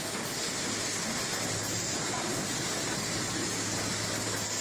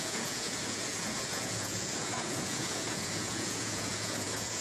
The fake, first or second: second